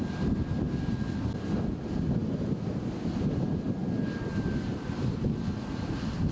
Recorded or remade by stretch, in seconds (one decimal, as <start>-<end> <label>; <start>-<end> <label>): 0.0-6.3 recorded